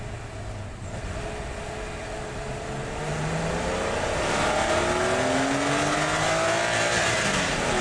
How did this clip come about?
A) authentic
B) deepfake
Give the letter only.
A